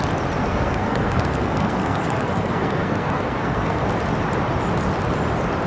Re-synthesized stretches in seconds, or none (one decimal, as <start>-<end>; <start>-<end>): 0.4-3.8